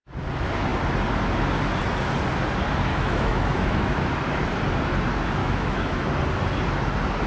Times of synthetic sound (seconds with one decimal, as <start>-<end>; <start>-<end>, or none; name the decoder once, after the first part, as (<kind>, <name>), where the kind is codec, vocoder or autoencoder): 2.9-4.1 (autoencoder, DAC-VAE); 5.4-6.1